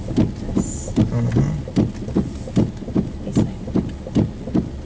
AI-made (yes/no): no